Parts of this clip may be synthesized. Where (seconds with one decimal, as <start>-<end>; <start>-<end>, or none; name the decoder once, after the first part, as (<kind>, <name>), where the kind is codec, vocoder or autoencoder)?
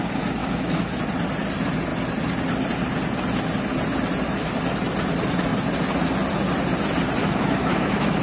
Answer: 0.4-0.9 (autoencoder, DAC-VAE); 7.2-8.2